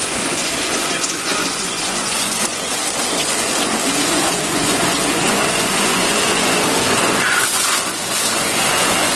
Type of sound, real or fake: fake